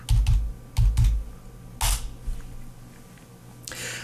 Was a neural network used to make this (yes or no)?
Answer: no